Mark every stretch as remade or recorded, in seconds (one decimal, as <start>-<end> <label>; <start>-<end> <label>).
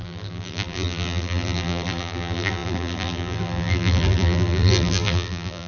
0.0-5.7 remade